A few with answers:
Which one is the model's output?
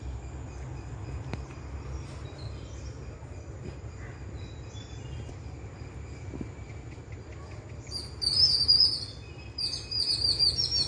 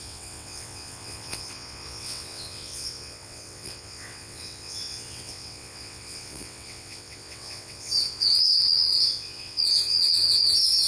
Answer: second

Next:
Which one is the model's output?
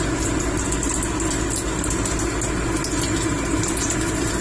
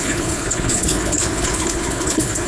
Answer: second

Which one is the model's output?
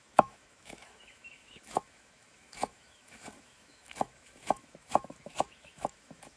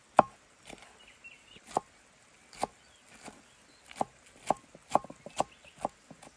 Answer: first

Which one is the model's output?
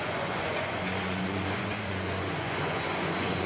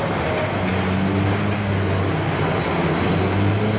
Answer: first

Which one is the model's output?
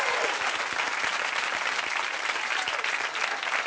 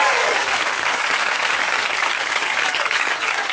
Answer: second